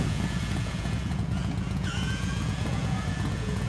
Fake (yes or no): yes